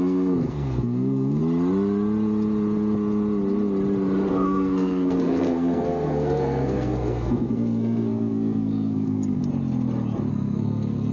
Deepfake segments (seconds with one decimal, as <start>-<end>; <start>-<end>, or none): 0.0-1.4; 4.3-9.4; 10.3-11.1